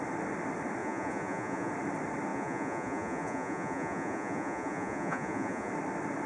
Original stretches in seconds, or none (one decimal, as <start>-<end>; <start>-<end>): 0.0-0.8; 1.7-2.3; 5.7-6.3